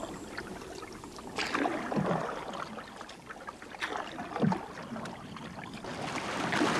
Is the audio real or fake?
real